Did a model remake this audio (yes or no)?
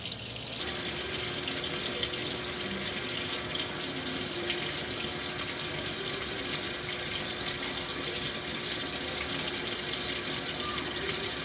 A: no